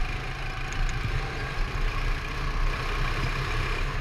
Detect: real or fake real